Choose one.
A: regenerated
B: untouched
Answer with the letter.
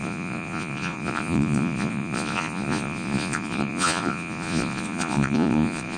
A